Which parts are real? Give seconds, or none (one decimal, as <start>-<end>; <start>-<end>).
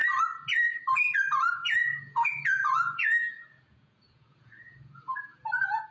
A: 0.0-1.5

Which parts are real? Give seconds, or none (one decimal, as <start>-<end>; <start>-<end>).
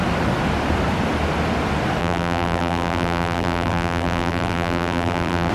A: 0.0-2.0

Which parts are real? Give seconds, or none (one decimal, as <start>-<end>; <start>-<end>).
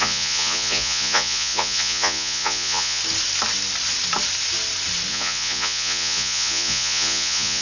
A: 3.0-5.1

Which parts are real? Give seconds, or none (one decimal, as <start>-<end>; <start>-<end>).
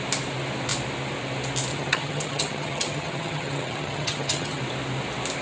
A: 0.0-1.7; 4.6-5.4